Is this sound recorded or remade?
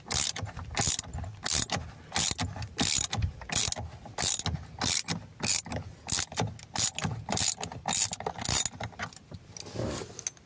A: recorded